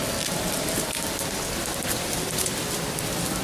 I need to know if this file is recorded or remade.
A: recorded